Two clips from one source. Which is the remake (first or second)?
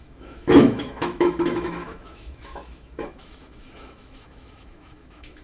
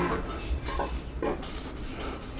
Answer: first